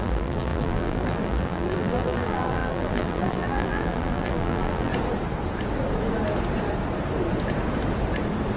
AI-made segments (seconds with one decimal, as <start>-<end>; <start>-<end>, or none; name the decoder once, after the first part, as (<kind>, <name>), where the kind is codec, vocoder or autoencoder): 0.0-4.9 (vocoder, BigVGAN v2)